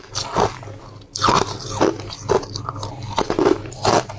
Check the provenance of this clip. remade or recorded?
recorded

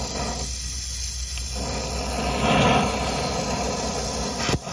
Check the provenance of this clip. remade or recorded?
recorded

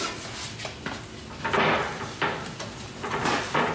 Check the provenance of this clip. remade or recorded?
recorded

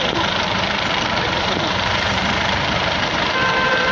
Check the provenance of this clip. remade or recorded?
remade